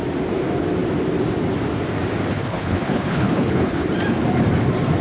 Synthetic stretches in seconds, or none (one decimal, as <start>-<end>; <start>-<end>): 2.3-3.9